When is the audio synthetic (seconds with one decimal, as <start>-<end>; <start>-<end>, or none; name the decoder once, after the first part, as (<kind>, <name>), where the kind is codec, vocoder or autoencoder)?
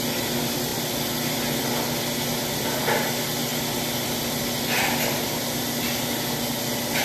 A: 0.7-1.6 (vocoder, BigVGAN v2)